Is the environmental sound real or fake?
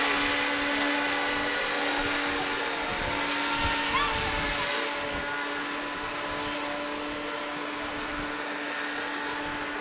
real